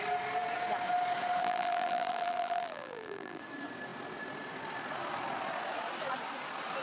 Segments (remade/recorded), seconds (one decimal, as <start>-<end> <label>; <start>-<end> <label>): 0.0-1.4 recorded; 1.4-3.4 remade; 3.4-6.8 recorded